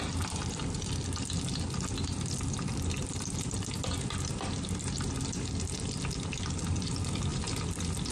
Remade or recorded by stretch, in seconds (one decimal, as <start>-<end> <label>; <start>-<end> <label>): 0.0-8.1 recorded